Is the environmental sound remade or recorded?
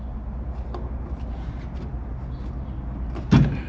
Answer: recorded